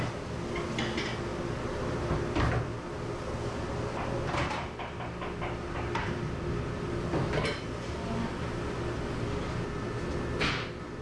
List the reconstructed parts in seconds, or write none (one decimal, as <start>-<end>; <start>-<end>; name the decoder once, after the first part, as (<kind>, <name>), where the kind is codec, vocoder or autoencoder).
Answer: none